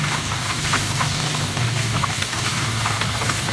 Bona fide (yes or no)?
no